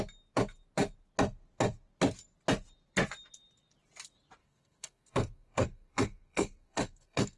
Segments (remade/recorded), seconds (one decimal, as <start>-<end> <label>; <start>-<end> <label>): 0.0-4.4 recorded; 4.4-7.4 remade

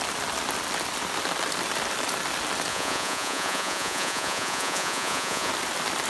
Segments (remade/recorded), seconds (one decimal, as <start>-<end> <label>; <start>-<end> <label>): 0.0-2.7 recorded; 2.7-5.5 remade; 5.5-6.1 recorded

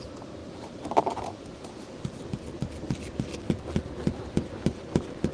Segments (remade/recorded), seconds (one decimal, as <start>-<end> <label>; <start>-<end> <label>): 0.0-5.3 recorded